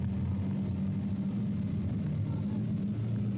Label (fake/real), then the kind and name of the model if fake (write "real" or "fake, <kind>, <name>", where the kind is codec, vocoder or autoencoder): real